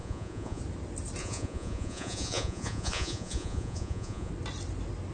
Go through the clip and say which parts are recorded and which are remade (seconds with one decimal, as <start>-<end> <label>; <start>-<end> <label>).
0.0-0.6 remade; 0.6-1.2 recorded; 1.2-4.3 remade; 4.3-5.1 recorded